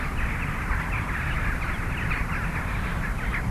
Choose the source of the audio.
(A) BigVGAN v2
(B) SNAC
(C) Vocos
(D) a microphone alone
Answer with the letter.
A